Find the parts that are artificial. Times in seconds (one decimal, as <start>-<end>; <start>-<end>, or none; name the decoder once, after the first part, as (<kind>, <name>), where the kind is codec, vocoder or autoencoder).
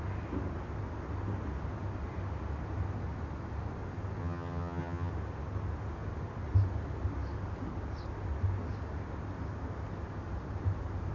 4.2-5.1 (vocoder, HiFi-GAN)